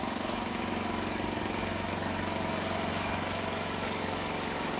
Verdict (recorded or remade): remade